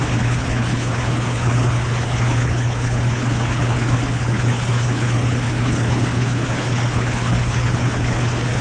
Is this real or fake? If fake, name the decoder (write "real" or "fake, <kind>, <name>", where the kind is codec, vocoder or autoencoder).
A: fake, codec, HILCodec